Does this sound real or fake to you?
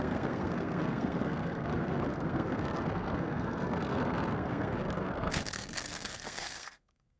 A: fake